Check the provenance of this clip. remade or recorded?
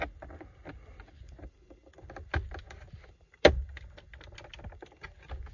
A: recorded